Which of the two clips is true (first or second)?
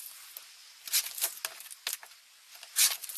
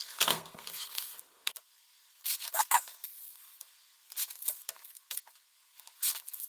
first